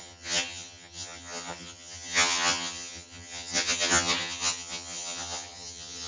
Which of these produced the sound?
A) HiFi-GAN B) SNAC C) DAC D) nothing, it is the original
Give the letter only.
A